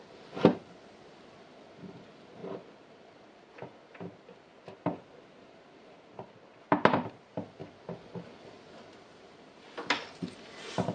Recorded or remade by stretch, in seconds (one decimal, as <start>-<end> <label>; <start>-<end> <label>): 0.0-10.9 recorded